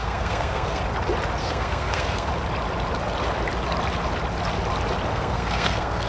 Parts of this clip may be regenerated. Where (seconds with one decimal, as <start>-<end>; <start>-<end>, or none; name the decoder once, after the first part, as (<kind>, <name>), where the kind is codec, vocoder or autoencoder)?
0.0-0.8 (codec, SNAC); 1.4-2.3; 5.1-6.1